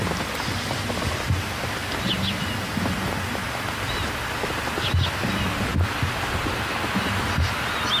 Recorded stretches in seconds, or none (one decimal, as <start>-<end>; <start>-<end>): 1.4-5.7; 6.7-8.0